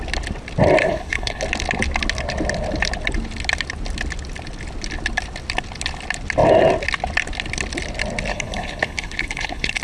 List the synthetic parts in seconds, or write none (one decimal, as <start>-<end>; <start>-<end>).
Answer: 0.8-1.4; 8.3-9.8